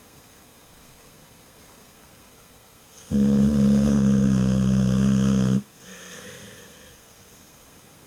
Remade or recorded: remade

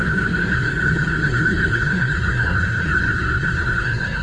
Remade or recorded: remade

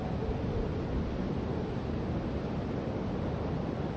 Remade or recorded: recorded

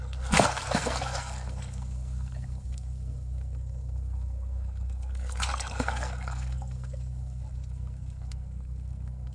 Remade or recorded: remade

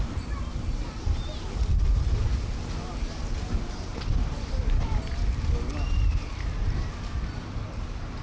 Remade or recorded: recorded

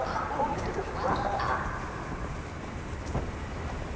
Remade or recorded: recorded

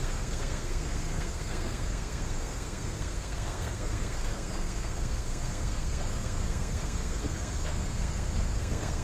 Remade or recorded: remade